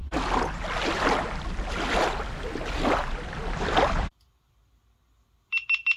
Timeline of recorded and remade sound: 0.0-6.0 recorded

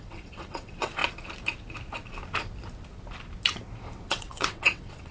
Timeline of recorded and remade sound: 0.0-1.0 remade; 1.0-4.1 recorded; 4.1-5.1 remade

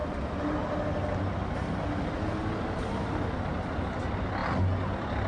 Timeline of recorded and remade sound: 0.0-5.3 recorded

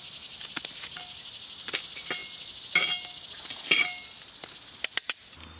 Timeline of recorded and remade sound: 0.0-5.6 recorded

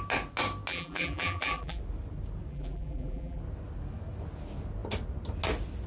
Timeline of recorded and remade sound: 0.0-0.7 recorded; 0.7-1.8 remade; 1.8-2.5 recorded; 2.5-3.4 remade; 3.4-5.9 recorded

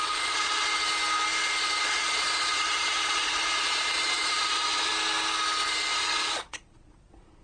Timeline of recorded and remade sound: 0.0-0.7 remade; 0.7-1.8 recorded; 1.8-4.9 remade; 4.9-6.0 recorded; 6.0-7.4 remade

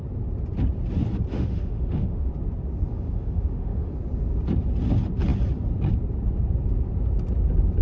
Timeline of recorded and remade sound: 0.0-1.3 recorded; 1.3-2.3 remade; 2.3-2.9 recorded; 2.9-3.9 remade; 3.9-7.8 recorded

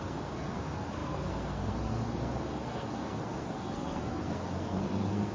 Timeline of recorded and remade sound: 0.0-5.3 remade